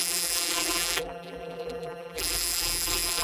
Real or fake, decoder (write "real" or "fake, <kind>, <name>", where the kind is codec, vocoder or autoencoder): fake, vocoder, BigVGAN v2